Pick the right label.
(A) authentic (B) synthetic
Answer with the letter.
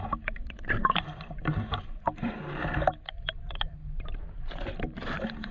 B